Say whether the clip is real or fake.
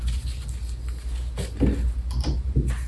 real